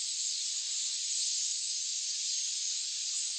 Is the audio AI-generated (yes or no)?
no